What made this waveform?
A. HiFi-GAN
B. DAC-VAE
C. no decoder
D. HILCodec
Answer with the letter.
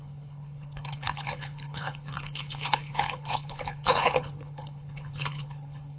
D